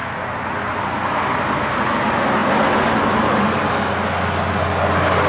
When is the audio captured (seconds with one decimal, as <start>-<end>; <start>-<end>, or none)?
0.0-5.3